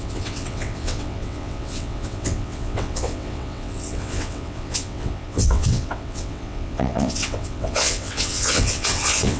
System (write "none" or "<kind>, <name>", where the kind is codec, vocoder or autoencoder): vocoder, WaveNeXt